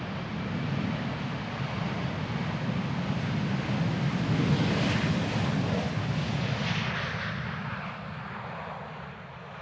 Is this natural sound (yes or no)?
yes